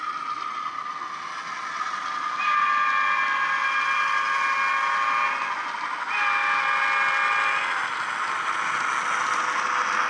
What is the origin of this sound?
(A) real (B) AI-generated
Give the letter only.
A